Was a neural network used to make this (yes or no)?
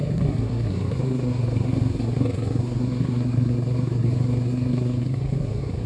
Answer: yes